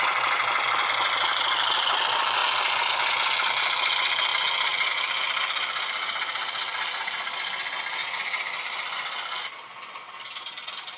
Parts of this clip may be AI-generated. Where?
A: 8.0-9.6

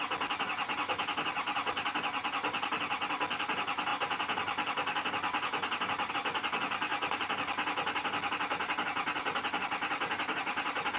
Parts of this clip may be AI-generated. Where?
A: 0.0-6.9; 8.3-11.0

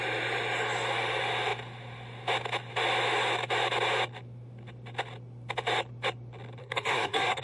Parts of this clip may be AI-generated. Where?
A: 6.6-7.4

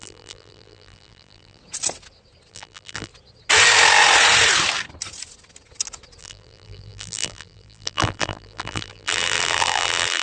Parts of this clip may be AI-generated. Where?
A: 0.0-1.6; 2.5-3.1; 6.2-10.2